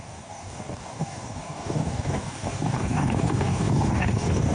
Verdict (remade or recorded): remade